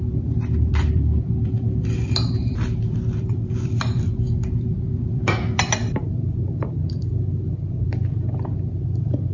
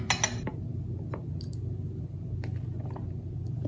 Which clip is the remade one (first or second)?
first